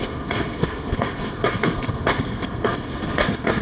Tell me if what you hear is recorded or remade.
remade